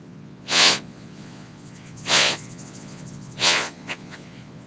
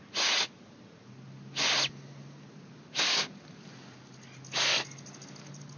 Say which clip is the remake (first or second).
first